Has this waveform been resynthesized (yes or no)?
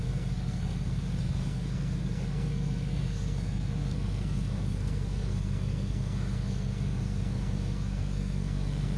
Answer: yes